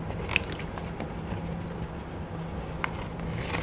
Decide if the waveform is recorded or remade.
recorded